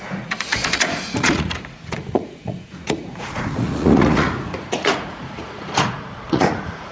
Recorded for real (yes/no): no